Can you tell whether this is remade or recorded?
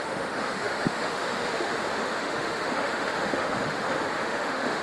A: remade